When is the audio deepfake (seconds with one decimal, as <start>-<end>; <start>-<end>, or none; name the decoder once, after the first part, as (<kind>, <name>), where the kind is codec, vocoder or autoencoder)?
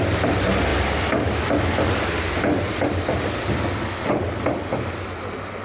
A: none